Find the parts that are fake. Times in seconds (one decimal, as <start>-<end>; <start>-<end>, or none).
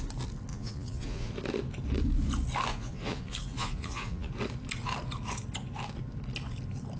0.5-1.3; 2.7-4.3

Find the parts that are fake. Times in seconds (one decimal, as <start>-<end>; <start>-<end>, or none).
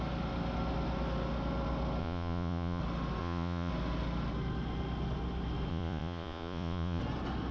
2.0-2.8; 3.2-3.7; 5.7-7.0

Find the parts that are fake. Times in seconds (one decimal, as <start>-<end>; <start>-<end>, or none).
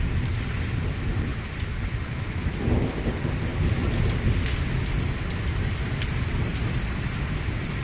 none